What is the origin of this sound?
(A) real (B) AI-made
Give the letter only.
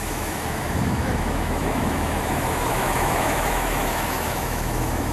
B